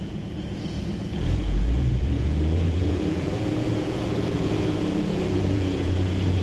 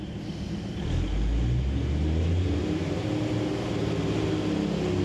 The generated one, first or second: first